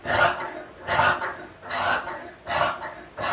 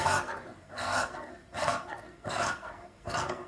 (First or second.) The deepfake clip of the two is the second